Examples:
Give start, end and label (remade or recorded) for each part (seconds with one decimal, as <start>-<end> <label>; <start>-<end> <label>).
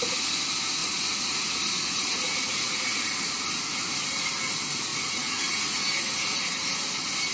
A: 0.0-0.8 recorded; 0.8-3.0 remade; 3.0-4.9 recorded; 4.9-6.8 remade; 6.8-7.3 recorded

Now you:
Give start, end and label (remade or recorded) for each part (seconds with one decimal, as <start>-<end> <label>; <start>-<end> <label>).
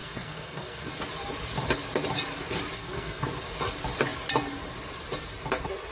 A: 0.0-0.9 remade; 0.9-2.8 recorded; 2.8-3.3 remade; 3.3-5.9 recorded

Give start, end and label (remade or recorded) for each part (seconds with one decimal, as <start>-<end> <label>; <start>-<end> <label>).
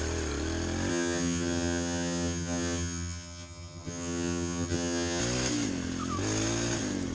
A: 0.0-0.9 recorded; 0.9-5.2 remade; 5.2-7.1 recorded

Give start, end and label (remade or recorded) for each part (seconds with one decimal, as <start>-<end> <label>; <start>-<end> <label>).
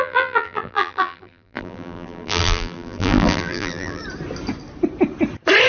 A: 0.0-4.0 remade; 4.0-5.7 recorded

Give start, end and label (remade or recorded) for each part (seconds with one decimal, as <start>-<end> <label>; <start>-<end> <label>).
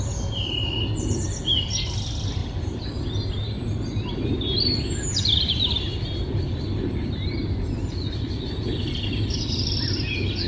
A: 0.0-10.5 recorded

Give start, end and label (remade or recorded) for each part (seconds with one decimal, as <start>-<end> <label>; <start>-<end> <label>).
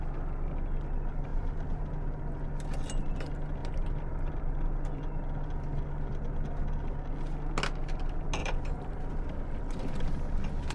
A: 0.0-1.3 recorded; 1.3-2.2 remade; 2.2-3.6 recorded; 3.6-4.4 remade; 4.4-8.4 recorded; 8.4-9.6 remade; 9.6-10.7 recorded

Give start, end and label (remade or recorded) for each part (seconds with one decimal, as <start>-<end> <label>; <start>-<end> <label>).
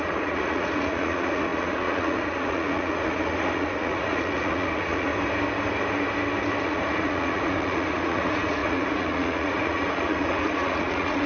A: 0.0-5.1 remade; 5.1-6.6 recorded; 6.6-11.3 remade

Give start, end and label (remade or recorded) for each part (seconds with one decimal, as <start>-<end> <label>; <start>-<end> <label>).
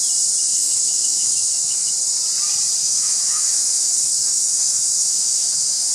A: 0.0-0.5 recorded; 0.5-1.9 remade; 1.9-2.8 recorded; 2.8-5.9 remade